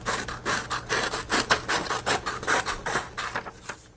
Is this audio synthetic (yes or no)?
no